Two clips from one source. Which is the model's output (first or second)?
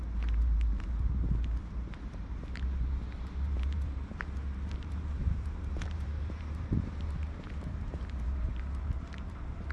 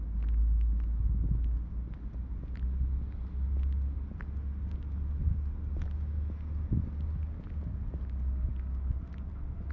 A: first